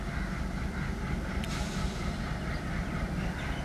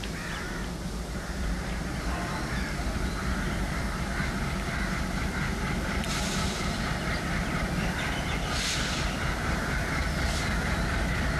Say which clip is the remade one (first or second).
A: second